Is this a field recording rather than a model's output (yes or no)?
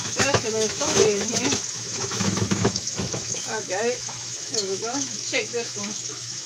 no